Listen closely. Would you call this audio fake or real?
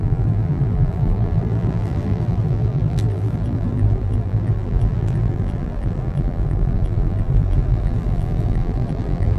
fake